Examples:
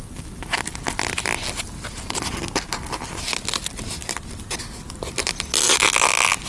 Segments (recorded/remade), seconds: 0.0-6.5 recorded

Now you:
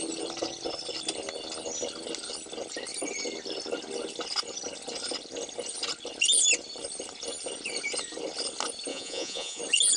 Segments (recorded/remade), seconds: 0.0-8.9 recorded; 8.9-9.6 remade; 9.6-10.0 recorded